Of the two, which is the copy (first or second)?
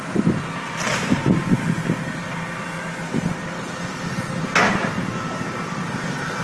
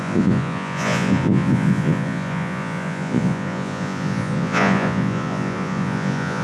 second